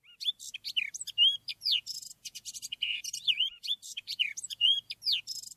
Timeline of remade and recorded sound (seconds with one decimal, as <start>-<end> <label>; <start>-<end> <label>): 0.0-1.5 recorded; 1.5-4.9 remade; 4.9-5.6 recorded